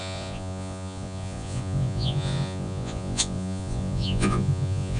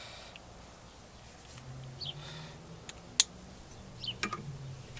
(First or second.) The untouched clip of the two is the second